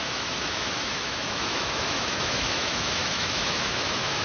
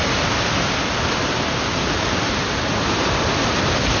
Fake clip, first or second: first